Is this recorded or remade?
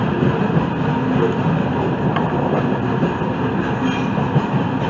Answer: recorded